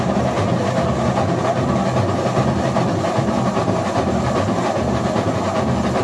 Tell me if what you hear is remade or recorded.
recorded